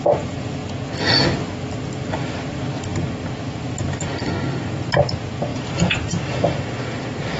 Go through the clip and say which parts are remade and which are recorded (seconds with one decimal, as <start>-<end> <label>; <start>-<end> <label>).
0.0-5.5 recorded; 5.5-6.7 remade; 6.7-7.4 recorded